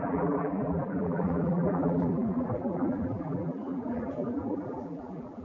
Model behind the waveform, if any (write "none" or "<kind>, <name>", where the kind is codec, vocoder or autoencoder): vocoder, BigVGAN v2